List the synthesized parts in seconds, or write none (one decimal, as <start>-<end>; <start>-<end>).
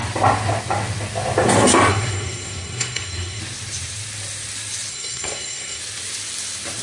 1.9-3.4; 4.9-5.8